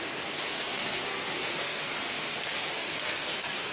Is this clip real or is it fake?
fake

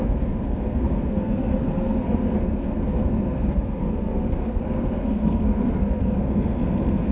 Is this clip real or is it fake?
fake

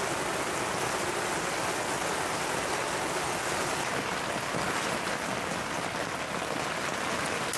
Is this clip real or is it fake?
real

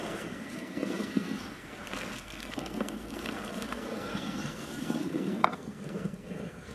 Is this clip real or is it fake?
fake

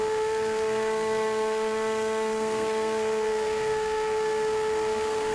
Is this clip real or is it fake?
fake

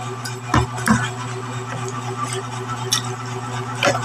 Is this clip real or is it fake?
real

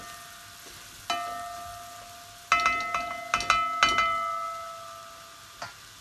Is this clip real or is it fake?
real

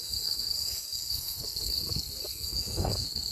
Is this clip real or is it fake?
fake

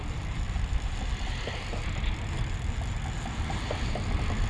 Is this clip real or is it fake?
real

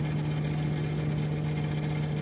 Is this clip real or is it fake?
real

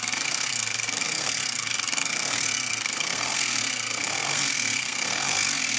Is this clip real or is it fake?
fake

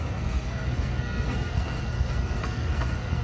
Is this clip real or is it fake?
fake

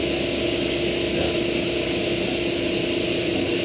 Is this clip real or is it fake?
real